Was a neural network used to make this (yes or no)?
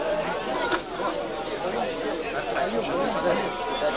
no